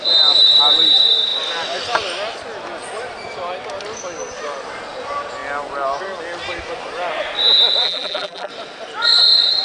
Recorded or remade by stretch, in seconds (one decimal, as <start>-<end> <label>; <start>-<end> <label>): 0.0-7.8 recorded; 7.8-8.5 remade; 8.5-9.6 recorded